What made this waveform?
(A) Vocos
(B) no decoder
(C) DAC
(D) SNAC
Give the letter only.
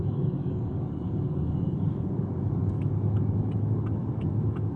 C